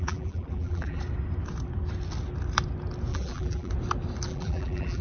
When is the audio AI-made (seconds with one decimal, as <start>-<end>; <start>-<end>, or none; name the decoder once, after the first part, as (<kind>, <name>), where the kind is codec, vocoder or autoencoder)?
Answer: 0.0-1.0 (vocoder, BigVGAN v2); 3.1-3.7; 4.3-5.0